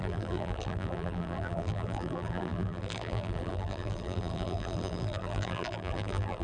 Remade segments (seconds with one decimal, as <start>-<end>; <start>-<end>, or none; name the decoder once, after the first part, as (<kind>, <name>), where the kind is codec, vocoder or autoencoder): 0.0-6.4 (vocoder, BigVGAN v2)